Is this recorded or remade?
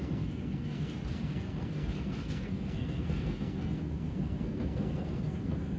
remade